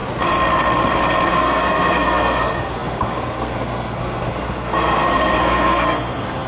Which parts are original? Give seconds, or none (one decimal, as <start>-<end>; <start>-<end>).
0.0-1.3